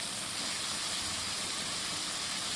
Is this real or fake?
real